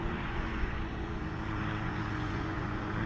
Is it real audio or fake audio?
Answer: fake